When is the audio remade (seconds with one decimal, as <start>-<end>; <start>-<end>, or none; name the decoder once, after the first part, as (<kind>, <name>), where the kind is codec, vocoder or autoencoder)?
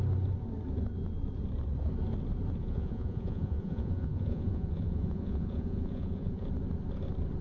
2.6-6.5 (vocoder, Vocos)